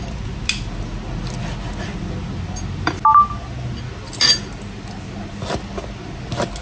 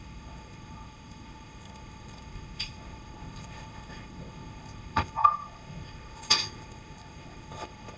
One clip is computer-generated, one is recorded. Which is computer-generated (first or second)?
second